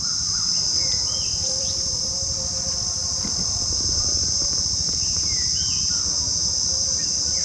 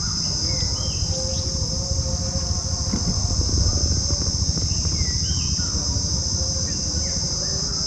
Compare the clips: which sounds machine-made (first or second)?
first